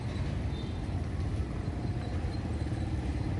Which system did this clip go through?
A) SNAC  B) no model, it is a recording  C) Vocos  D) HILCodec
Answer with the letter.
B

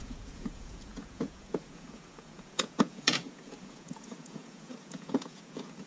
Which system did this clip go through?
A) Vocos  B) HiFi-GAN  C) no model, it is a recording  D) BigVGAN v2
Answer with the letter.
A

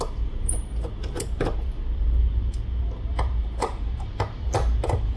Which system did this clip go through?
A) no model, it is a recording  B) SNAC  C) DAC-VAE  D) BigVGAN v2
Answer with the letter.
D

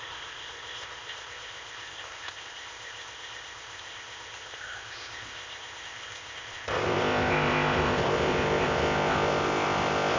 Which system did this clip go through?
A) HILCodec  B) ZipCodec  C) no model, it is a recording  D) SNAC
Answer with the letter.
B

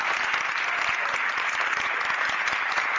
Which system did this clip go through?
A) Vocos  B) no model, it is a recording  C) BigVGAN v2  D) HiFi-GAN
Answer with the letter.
C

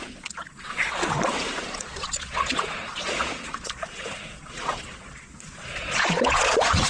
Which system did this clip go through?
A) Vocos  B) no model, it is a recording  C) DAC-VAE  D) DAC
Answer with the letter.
A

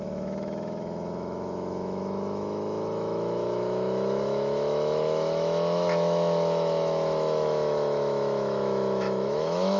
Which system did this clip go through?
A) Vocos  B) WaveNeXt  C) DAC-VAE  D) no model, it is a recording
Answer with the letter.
C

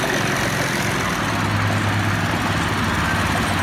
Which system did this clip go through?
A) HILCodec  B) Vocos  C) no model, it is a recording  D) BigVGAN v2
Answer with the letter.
C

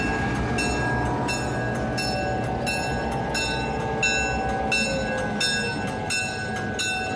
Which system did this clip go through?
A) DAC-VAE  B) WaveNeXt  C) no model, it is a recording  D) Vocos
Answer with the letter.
C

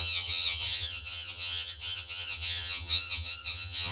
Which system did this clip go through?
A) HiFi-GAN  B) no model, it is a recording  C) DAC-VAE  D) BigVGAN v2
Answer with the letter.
A